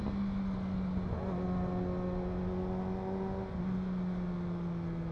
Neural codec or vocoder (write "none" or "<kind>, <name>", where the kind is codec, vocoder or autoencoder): none